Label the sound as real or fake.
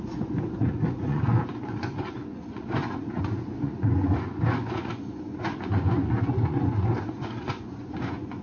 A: fake